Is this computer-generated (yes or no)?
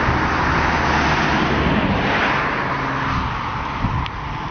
no